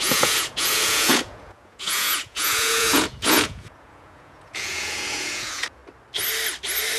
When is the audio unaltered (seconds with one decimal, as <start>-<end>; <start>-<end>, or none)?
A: 5.8-7.0